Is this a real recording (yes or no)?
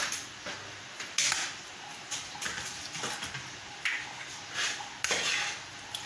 yes